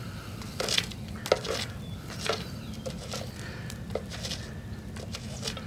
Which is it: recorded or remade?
recorded